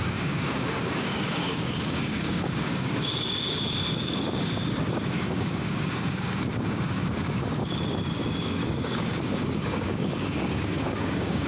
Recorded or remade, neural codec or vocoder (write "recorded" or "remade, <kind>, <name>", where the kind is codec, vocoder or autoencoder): remade, codec, DAC